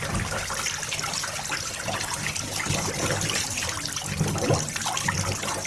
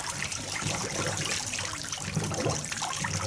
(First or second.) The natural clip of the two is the first